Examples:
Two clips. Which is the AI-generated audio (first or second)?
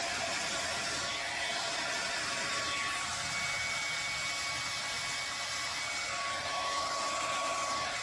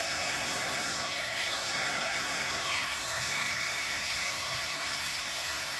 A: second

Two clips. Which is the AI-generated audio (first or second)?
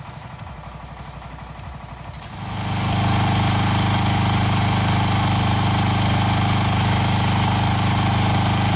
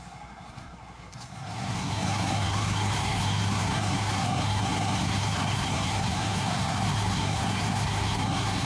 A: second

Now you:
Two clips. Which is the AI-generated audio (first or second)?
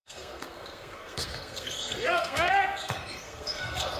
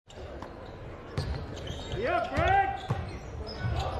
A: first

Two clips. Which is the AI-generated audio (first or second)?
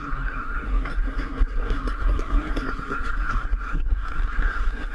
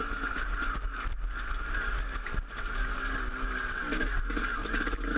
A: first